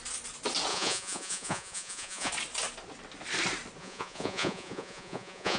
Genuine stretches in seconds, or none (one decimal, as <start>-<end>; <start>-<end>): 0.0-0.7; 2.3-3.8